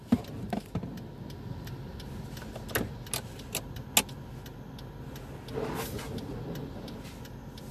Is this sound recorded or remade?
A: recorded